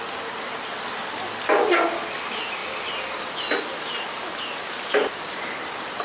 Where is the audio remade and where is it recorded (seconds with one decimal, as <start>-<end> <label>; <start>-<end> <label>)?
0.0-6.0 recorded